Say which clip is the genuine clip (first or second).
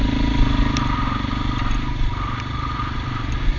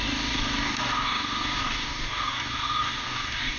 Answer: first